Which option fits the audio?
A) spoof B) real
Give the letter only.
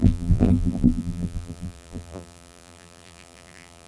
A